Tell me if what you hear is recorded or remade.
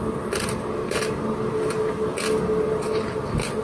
recorded